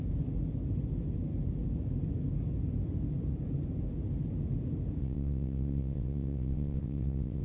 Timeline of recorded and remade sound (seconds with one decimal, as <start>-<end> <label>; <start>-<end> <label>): 0.0-5.0 recorded; 5.0-7.4 remade